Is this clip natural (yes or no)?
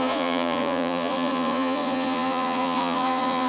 no